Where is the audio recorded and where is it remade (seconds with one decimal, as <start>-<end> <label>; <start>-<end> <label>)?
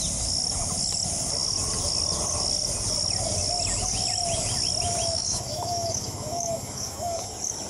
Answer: 0.0-5.1 recorded; 5.1-7.3 remade; 7.3-7.7 recorded